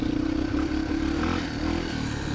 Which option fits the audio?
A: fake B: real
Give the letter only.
B